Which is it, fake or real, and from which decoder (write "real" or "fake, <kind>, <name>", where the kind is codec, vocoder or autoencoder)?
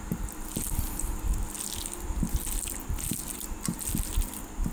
real